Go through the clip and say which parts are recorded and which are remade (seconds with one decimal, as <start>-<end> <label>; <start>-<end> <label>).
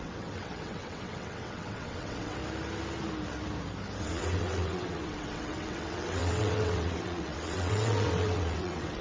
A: 0.0-2.4 remade; 2.4-4.0 recorded; 4.0-9.0 remade